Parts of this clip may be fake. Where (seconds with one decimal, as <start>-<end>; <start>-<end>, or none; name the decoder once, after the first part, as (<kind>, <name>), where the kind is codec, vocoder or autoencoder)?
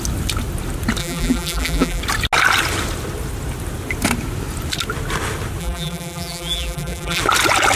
1.0-2.0 (vocoder, BigVGAN v2); 5.6-7.2